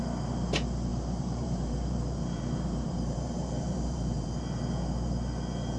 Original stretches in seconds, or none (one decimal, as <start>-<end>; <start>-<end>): 0.0-0.9; 4.4-5.8

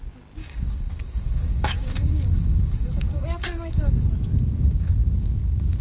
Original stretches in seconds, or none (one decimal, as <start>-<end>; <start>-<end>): 0.0-0.4; 3.9-4.3

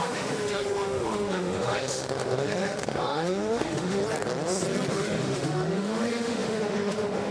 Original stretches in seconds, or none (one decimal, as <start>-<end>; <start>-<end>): 4.0-4.9